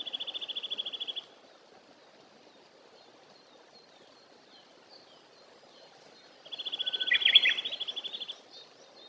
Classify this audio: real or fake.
real